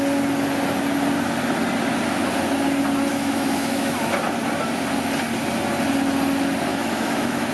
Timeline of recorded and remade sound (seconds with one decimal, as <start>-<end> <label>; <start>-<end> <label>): 0.0-3.1 recorded; 3.1-4.2 remade; 4.2-6.7 recorded; 6.7-7.5 remade

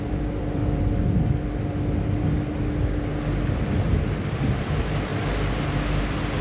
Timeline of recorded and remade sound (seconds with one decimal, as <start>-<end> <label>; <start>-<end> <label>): 0.0-0.6 remade; 0.6-4.4 recorded; 4.4-5.1 remade; 5.1-6.0 recorded; 6.0-6.4 remade